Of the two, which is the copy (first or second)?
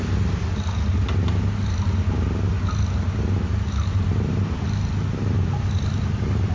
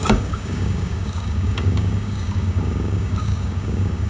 second